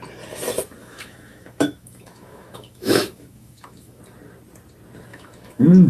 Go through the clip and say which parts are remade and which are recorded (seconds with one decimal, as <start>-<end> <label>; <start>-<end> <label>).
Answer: 0.0-0.8 recorded; 0.8-4.0 remade; 4.0-5.1 recorded; 5.1-5.9 remade